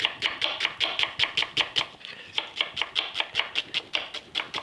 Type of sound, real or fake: real